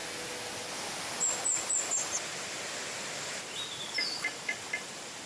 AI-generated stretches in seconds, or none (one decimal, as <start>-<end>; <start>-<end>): 3.2-5.3